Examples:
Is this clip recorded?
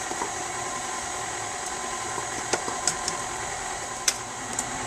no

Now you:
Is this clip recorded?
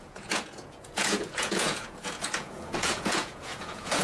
no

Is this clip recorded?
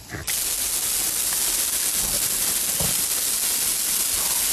yes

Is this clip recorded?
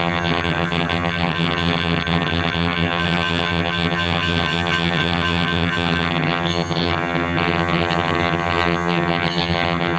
no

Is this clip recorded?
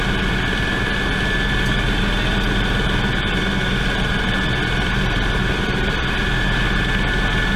yes